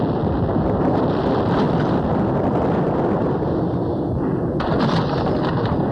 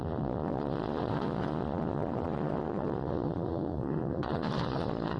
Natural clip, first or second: first